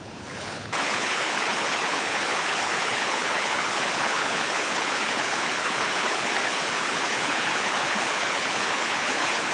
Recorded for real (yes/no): no